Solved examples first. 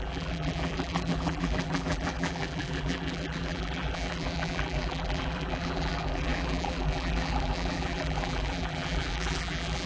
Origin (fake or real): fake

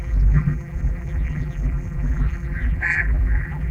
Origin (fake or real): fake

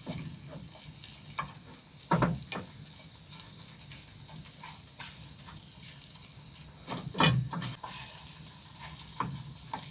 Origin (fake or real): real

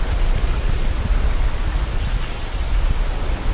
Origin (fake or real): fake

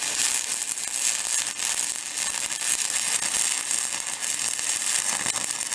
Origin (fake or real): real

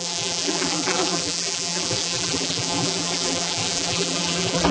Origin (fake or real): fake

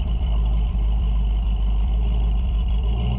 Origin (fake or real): fake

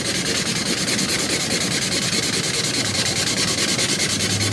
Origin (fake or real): real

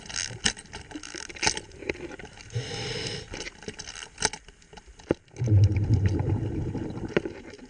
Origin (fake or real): real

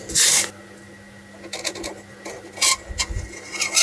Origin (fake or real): real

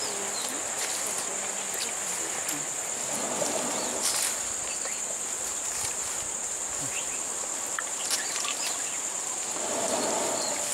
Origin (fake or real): real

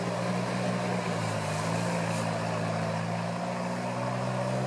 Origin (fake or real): real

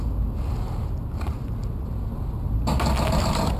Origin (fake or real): real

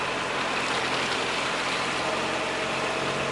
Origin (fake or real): real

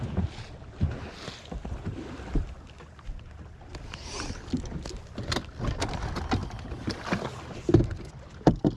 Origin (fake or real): real